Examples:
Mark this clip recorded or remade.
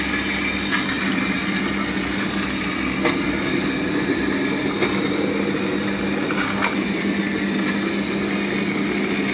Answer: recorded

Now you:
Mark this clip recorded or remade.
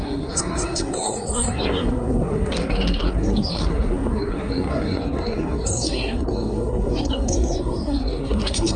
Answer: remade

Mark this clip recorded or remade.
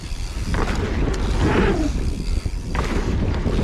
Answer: recorded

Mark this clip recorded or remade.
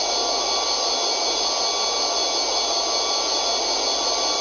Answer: recorded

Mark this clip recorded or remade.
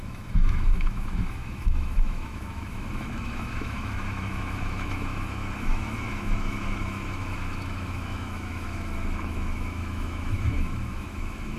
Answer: remade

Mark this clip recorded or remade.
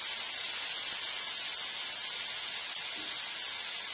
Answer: recorded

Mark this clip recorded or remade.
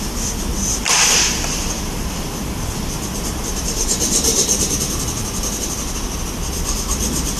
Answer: recorded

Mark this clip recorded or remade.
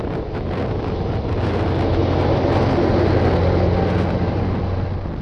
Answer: recorded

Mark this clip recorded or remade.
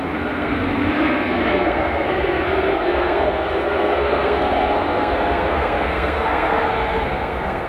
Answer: remade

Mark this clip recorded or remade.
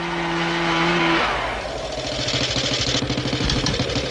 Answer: recorded